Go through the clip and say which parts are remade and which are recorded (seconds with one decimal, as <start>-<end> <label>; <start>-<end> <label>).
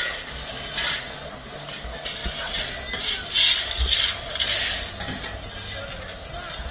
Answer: 0.0-6.7 recorded